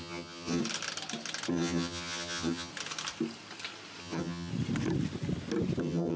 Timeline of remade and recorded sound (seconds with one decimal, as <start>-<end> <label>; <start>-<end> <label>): 0.0-0.6 remade; 0.6-1.5 recorded; 1.5-2.7 remade; 2.7-4.0 recorded; 4.0-4.5 remade; 4.5-5.8 recorded; 5.8-6.2 remade